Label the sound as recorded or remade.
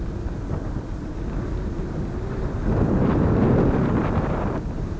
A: recorded